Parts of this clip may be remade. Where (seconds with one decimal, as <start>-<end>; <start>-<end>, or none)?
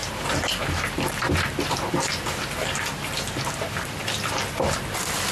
0.0-5.3